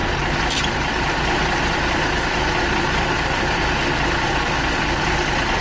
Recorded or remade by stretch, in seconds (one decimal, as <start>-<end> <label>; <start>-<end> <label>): 0.0-5.6 recorded